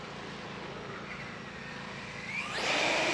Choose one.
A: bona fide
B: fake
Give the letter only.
A